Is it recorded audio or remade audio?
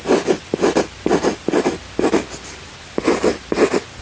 recorded